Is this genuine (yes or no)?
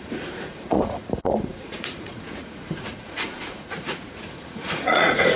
no